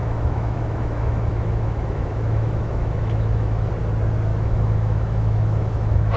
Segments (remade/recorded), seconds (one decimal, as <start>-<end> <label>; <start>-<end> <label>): 0.0-3.7 remade; 3.7-4.3 recorded; 4.3-6.2 remade